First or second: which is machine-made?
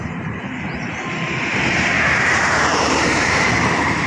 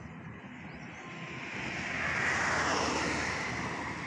first